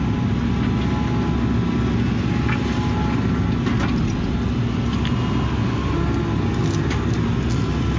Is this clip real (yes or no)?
yes